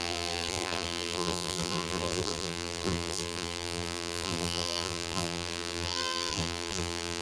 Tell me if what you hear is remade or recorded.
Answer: remade